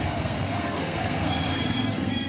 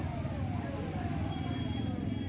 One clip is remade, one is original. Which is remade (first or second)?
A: first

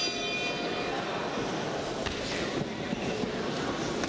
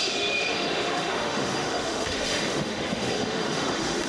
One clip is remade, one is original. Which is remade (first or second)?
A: second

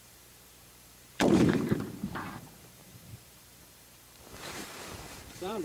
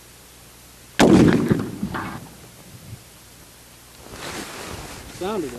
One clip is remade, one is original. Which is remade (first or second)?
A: first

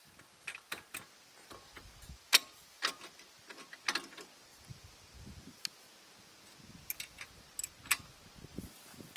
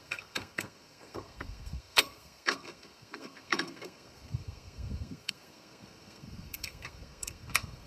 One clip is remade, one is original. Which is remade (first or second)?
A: second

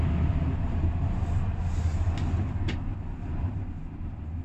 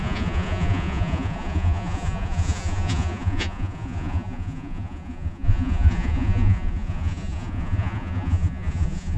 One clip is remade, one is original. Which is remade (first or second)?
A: second